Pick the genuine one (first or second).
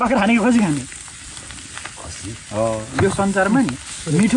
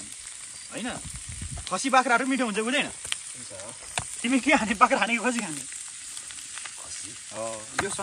first